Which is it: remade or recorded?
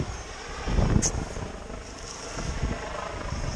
recorded